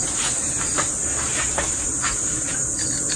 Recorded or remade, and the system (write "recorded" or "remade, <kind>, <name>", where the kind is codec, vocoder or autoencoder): recorded